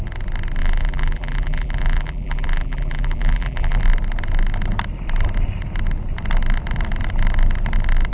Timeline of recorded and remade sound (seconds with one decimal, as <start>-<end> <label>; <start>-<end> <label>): 0.0-0.6 recorded; 0.6-3.8 remade; 3.8-8.1 recorded